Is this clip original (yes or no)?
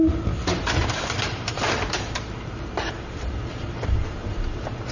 no